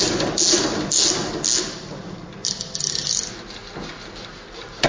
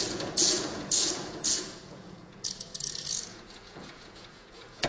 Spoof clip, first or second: second